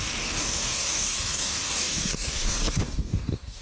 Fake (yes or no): yes